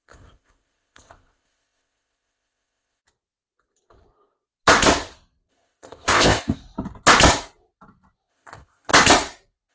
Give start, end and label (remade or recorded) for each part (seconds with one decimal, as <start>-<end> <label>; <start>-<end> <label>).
0.0-3.0 remade; 3.0-5.5 recorded; 5.5-6.6 remade; 6.6-8.3 recorded; 8.3-8.9 remade; 8.9-9.7 recorded